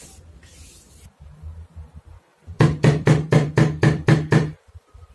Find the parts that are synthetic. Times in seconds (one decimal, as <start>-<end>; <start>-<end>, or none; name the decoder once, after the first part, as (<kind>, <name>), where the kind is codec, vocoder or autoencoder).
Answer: 2.3-5.1 (vocoder, BigVGAN v2)